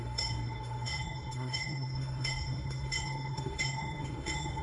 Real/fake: fake